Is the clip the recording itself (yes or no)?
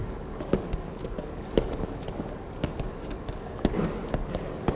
no